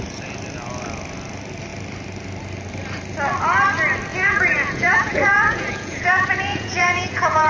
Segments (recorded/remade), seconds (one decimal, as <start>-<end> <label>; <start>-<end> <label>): 0.0-4.1 recorded; 4.1-7.5 remade